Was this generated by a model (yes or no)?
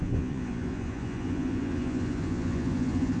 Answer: yes